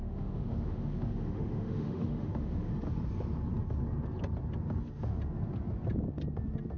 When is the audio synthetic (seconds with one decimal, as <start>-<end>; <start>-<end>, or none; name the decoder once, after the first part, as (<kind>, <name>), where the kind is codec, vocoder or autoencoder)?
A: 0.0-2.7 (autoencoder, DAC-VAE)